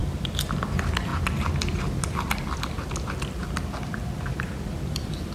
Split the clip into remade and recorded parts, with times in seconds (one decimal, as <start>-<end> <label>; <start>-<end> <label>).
0.0-0.6 recorded; 0.6-1.1 remade; 1.1-2.0 recorded; 2.0-5.3 remade